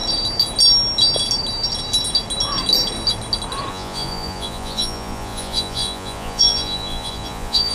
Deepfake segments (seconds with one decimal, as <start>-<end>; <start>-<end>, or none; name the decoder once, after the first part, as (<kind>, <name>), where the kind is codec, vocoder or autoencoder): 3.7-7.7 (vocoder, Vocos)